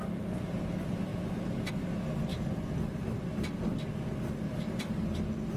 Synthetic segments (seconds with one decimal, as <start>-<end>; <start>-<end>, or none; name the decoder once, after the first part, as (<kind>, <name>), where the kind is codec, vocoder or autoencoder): none

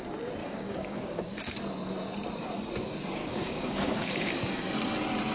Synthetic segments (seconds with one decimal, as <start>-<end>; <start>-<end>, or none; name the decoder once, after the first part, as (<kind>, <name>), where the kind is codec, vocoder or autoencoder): 0.4-1.3 (codec, DAC); 3.2-4.5

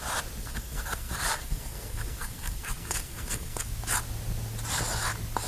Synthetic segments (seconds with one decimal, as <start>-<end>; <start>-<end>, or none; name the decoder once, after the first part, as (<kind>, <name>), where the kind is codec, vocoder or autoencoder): 0.4-3.7 (codec, SNAC)